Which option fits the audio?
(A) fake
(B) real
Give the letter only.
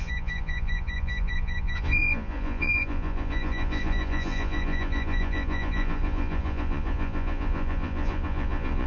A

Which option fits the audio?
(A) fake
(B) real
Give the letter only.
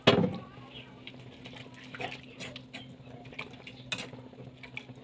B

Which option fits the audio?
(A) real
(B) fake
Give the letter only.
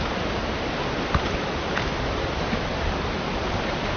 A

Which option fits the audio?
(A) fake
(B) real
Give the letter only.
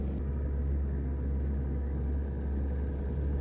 B